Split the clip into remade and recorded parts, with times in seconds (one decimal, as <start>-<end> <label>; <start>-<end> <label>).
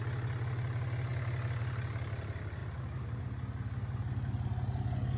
0.0-2.6 recorded; 2.6-3.2 remade; 3.2-5.2 recorded